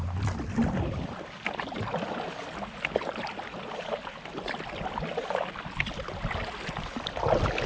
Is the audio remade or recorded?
recorded